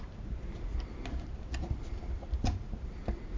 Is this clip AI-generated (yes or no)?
no